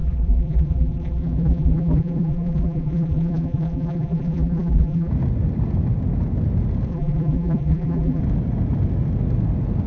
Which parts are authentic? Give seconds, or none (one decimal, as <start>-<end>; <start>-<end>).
5.1-6.9; 8.2-9.9